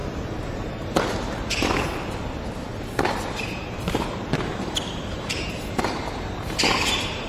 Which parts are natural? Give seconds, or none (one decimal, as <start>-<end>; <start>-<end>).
1.0-2.7